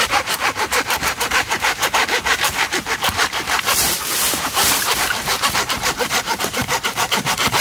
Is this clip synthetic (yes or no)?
yes